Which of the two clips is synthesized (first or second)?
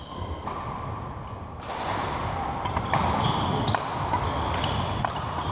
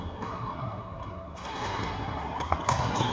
second